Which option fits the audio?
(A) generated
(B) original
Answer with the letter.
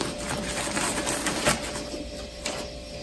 B